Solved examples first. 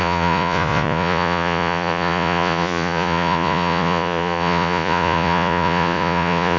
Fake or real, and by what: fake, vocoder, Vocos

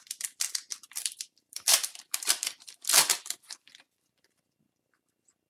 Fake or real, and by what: fake, vocoder, BigVGAN v2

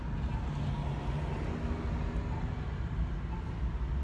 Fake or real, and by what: real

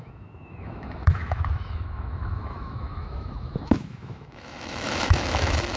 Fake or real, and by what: fake, autoencoder, DAC-VAE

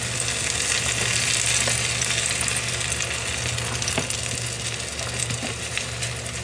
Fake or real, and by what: real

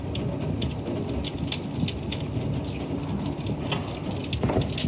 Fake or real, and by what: real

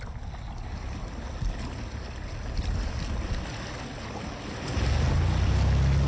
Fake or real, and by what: real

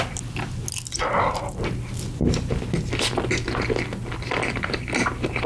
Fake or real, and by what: real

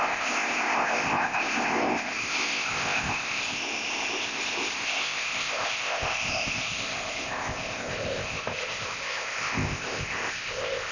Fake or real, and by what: fake, codec, ZipCodec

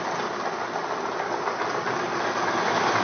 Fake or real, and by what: real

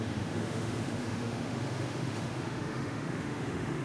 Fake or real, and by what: fake, autoencoder, DAC-VAE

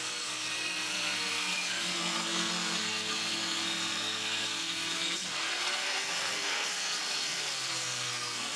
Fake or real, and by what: fake, codec, SNAC